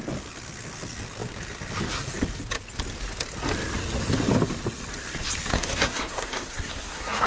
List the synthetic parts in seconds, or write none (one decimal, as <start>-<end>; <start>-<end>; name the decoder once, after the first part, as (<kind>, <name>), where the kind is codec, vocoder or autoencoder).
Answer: 5.5-7.3 (codec, SNAC)